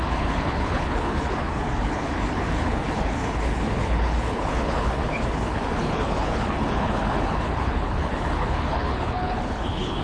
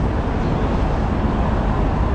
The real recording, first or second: second